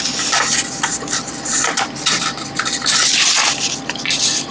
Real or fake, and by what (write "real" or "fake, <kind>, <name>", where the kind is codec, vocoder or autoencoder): real